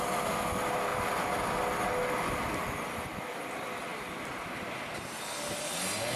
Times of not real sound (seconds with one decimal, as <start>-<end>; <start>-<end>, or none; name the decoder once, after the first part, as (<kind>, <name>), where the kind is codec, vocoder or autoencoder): 0.9-1.6 (vocoder, BigVGAN v2); 3.9-5.0

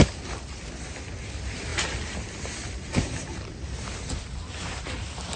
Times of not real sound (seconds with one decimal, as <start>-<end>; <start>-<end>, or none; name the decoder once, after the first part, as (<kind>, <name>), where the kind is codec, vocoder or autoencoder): 1.7-4.9 (vocoder, BigVGAN v2)

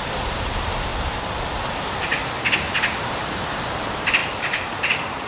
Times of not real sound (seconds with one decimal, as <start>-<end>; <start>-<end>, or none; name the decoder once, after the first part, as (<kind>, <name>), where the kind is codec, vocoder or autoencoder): 0.0-0.9 (vocoder, BigVGAN v2); 1.7-2.2; 2.9-5.3

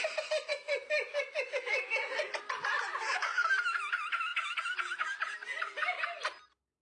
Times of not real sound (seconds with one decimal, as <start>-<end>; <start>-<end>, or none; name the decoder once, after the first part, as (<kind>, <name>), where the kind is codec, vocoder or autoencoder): 0.0-4.3 (vocoder, BigVGAN v2)

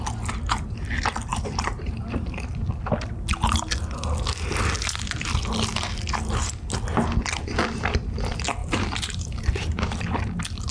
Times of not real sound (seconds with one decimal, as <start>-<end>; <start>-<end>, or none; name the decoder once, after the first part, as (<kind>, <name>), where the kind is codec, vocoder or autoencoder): 1.3-2.0 (vocoder, BigVGAN v2); 8.6-10.1

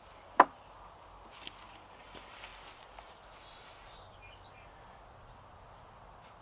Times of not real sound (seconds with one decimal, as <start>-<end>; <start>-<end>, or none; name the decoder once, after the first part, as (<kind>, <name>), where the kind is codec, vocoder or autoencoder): none